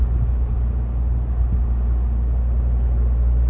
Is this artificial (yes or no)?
no